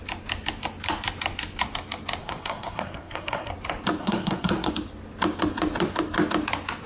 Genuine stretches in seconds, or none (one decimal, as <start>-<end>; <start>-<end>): 0.0-2.2; 3.5-4.0; 4.7-6.9